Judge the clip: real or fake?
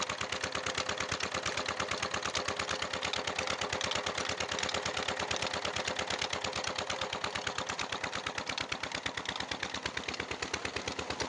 real